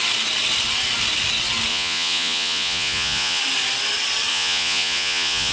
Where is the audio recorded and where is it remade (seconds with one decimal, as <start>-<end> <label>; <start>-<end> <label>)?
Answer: 0.0-1.7 recorded; 1.7-3.4 remade; 3.4-4.3 recorded; 4.3-5.5 remade